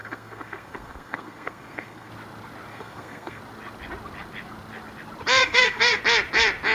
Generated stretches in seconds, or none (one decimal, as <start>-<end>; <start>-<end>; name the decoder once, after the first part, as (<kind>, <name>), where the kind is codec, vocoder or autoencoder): 0.0-2.1 (codec, SNAC); 2.7-3.4; 5.4-6.0